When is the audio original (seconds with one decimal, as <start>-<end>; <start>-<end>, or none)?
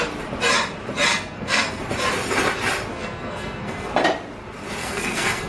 0.0-1.1; 1.8-2.9; 3.9-4.8